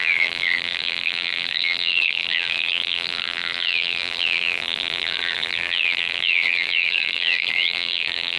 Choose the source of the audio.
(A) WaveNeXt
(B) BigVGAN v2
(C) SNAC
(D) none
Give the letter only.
B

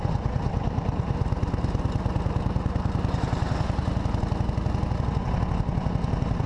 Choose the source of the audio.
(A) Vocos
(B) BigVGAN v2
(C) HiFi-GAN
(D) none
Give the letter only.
D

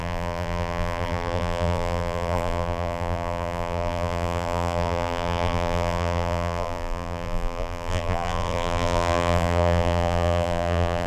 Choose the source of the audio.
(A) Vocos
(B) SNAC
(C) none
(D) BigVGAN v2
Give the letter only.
D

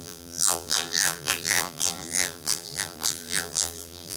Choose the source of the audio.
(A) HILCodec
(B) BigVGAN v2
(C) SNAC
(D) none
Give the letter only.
B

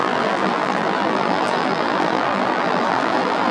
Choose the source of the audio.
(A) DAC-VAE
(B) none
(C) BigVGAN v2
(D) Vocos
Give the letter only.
C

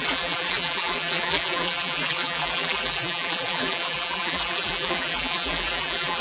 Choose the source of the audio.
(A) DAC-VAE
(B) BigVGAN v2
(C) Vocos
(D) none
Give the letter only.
B